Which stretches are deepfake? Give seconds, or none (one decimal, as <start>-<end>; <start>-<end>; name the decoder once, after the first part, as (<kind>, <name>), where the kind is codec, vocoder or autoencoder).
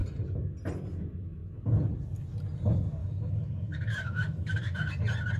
3.0-4.9 (autoencoder, DAC-VAE)